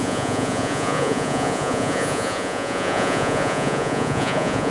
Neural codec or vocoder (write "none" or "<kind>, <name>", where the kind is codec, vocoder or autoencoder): vocoder, Vocos